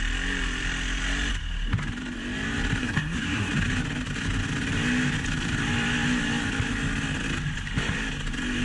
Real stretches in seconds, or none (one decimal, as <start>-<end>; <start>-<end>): 0.0-2.8; 3.5-8.6